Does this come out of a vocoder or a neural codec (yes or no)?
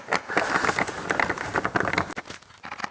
no